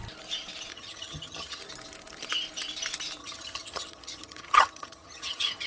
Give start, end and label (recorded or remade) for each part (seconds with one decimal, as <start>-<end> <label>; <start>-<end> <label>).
0.0-0.7 recorded; 0.7-1.6 remade; 1.6-3.2 recorded; 3.2-5.7 remade